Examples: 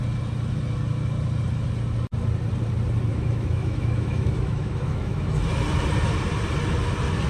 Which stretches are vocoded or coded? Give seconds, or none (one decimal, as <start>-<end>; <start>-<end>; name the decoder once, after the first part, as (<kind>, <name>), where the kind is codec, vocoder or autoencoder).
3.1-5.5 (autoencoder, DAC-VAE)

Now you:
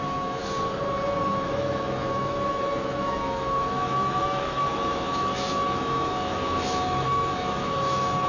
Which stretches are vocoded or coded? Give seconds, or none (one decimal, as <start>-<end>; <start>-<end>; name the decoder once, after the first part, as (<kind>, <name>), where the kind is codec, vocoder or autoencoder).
0.0-0.4 (autoencoder, DAC-VAE); 1.3-8.3

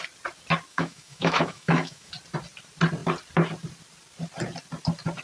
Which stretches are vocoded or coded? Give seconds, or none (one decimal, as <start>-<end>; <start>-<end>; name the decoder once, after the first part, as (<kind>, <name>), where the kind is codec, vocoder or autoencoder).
0.7-2.1 (autoencoder, DAC-VAE)